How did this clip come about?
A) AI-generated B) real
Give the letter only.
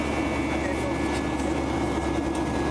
B